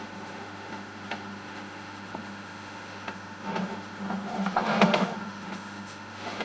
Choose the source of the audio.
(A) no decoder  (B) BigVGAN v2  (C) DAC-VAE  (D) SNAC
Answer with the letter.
C